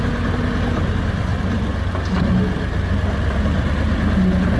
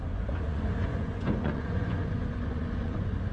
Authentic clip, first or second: first